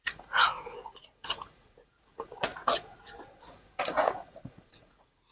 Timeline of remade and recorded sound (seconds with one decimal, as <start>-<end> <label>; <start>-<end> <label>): 0.0-5.3 remade